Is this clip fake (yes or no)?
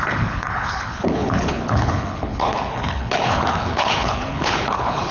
yes